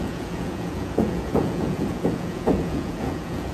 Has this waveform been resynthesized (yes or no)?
yes